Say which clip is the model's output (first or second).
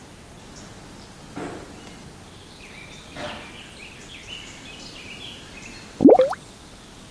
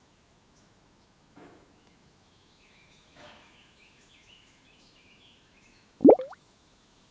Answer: second